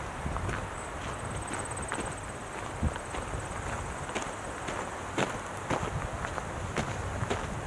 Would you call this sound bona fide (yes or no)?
yes